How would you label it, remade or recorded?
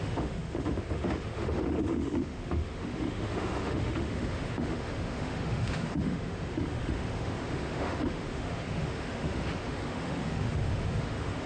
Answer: remade